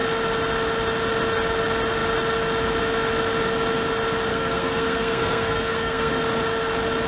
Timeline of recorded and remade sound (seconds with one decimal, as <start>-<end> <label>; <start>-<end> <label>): 0.0-4.3 recorded; 4.3-6.1 remade; 6.1-7.1 recorded